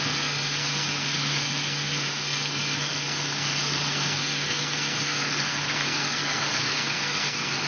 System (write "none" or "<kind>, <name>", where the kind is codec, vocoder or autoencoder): codec, SNAC